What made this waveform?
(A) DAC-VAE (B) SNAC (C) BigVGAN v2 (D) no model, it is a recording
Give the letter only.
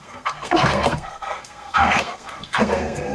B